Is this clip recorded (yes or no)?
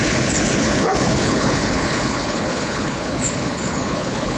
no